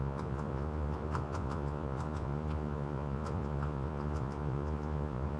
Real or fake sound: fake